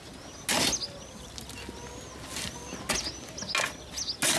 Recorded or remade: recorded